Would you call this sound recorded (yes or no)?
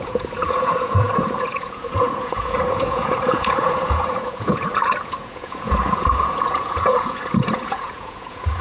no